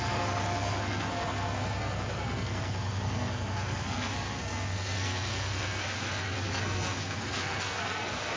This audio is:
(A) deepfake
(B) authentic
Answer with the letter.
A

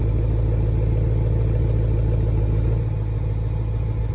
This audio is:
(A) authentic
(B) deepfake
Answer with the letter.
A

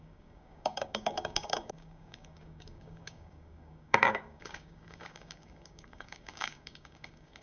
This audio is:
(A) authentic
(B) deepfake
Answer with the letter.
B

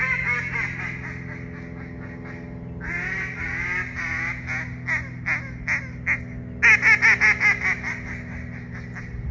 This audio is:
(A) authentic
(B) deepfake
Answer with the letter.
A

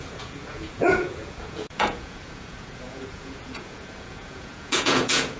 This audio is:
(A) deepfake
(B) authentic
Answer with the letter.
A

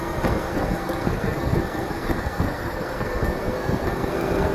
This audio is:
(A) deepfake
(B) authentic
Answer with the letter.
A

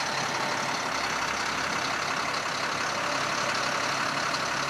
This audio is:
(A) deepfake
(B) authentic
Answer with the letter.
B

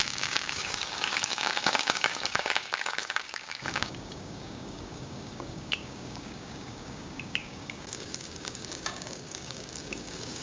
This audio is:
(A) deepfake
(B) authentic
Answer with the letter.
A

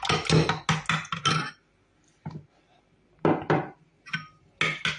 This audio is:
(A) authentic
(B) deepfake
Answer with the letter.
A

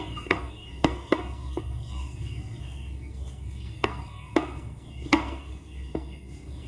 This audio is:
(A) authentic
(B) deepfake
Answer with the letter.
B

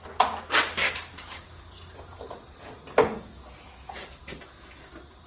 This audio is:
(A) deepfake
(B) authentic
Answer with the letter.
B